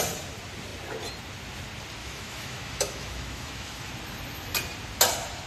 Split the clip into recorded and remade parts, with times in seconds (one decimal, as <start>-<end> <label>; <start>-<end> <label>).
0.0-2.0 recorded; 2.0-3.9 remade; 3.9-5.5 recorded